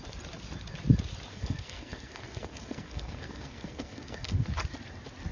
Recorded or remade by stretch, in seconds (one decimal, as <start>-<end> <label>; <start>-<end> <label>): 0.0-1.3 recorded; 1.3-4.5 remade; 4.5-5.3 recorded